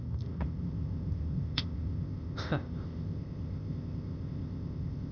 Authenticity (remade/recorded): remade